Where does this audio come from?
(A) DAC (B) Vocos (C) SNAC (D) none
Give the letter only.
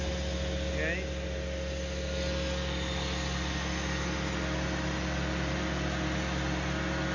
D